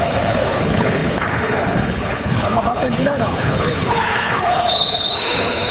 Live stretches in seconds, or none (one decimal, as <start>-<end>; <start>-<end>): none